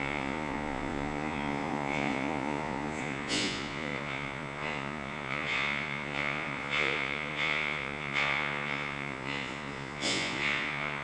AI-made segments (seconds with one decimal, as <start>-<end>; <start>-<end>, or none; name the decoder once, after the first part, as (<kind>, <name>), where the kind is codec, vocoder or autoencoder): 0.0-11.0 (vocoder, Vocos)